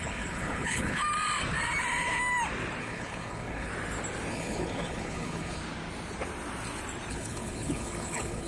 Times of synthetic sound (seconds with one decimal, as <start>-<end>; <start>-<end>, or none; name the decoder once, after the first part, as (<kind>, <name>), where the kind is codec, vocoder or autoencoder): 0.0-1.0 (codec, HILCodec); 2.8-3.7; 4.3-5.6; 7.1-8.5